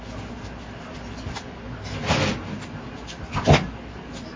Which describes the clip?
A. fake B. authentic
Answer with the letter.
B